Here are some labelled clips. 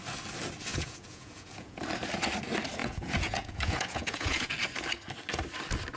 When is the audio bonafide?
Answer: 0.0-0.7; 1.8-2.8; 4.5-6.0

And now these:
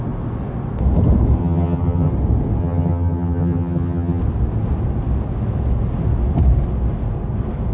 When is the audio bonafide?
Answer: 0.0-1.4; 2.1-2.6; 4.2-7.7

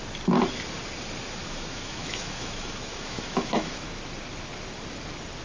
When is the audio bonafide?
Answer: 0.0-1.4; 4.0-5.4

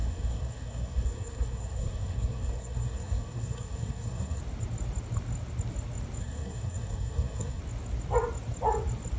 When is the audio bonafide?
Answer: 4.4-6.2; 7.6-9.2

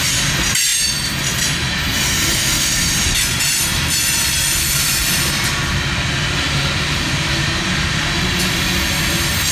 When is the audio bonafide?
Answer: 0.0-9.5

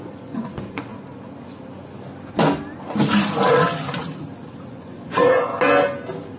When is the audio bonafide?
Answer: 0.9-4.7; 5.5-6.4